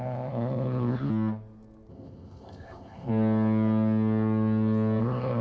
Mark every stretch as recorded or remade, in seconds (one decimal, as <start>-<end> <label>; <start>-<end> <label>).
0.0-1.1 remade; 1.1-1.9 recorded; 1.9-3.1 remade; 3.1-5.0 recorded; 5.0-5.4 remade